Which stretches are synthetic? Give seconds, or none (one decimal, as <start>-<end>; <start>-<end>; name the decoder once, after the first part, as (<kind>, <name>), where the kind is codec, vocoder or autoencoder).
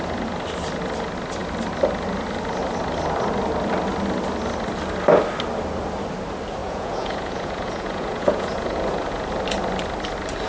6.6-9.3 (vocoder, Vocos)